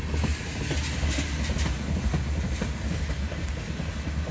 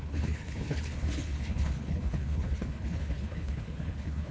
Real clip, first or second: first